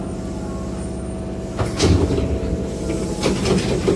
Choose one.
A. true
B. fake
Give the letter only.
A